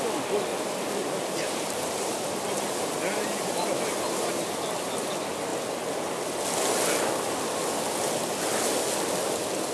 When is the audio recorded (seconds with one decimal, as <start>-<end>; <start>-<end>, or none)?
0.0-0.5; 4.5-9.7